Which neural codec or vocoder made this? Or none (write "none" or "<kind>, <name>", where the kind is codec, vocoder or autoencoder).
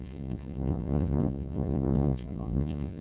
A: vocoder, Vocos